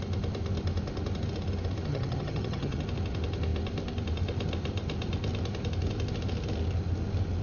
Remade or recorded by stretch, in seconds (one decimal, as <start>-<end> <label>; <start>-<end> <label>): 0.0-1.9 recorded; 1.9-2.8 remade; 2.8-7.4 recorded